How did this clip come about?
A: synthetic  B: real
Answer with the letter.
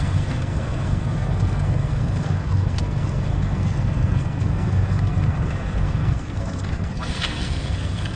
A